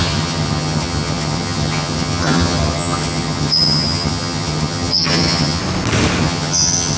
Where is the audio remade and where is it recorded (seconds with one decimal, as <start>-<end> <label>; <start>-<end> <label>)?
0.0-5.6 remade; 5.6-6.2 recorded; 6.2-7.0 remade